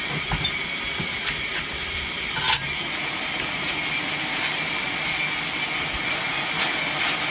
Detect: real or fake real